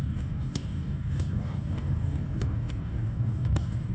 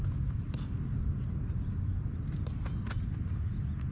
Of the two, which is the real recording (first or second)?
second